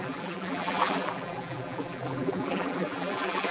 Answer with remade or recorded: remade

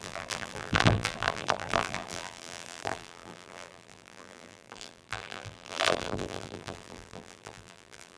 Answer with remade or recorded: remade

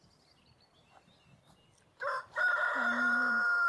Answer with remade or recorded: recorded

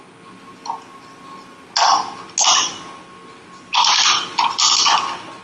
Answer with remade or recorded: recorded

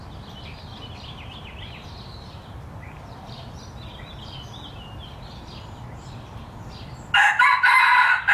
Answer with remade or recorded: recorded